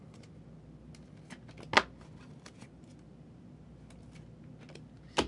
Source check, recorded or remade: recorded